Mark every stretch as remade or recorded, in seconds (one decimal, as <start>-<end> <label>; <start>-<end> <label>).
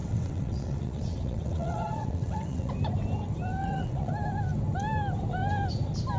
0.0-2.7 remade; 2.7-3.6 recorded; 3.6-4.1 remade; 4.1-6.2 recorded